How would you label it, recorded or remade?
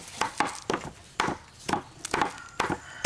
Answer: recorded